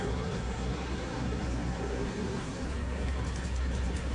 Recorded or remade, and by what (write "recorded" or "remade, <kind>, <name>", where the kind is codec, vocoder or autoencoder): remade, codec, SNAC